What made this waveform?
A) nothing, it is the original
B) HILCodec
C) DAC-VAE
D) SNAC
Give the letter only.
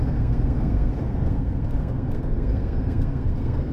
D